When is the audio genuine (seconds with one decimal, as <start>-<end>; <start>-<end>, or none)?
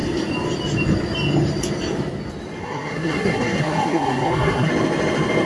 0.0-2.6; 4.7-5.5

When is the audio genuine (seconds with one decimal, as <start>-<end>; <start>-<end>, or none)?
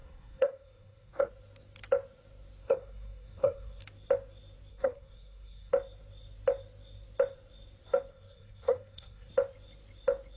1.3-2.6; 3.8-4.7; 5.7-8.1; 9.3-10.4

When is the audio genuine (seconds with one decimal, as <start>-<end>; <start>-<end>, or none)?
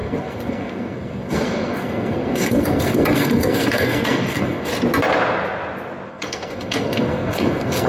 4.7-6.1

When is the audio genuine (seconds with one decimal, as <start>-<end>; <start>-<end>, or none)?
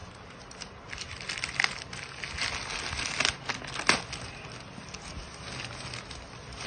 0.0-6.7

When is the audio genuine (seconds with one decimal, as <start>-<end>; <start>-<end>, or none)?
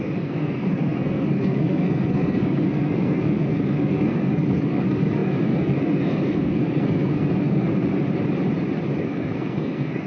7.9-9.0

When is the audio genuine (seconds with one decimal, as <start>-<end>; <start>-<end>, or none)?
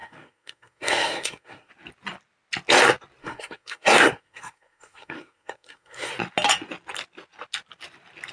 1.7-3.2; 6.1-8.3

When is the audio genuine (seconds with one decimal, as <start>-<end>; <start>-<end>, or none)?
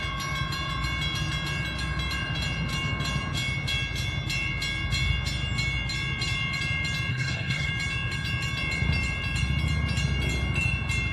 0.0-7.1; 7.7-11.1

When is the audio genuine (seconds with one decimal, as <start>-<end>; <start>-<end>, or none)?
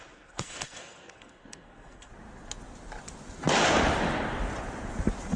2.1-5.4